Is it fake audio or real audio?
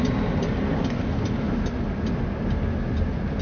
real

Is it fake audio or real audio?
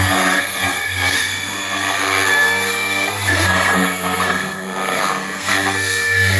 fake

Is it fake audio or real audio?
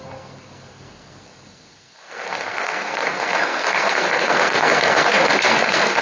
fake